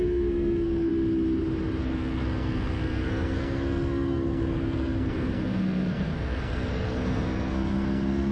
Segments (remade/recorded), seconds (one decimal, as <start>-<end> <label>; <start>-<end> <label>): 0.0-0.9 remade; 0.9-1.8 recorded; 1.8-8.3 remade